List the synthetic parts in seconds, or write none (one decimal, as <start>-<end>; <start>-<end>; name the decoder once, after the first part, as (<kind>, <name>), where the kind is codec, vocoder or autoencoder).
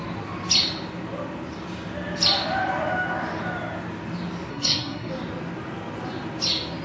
4.5-5.1 (codec, SNAC)